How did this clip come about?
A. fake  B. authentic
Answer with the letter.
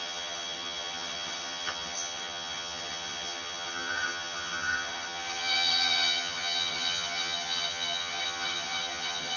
A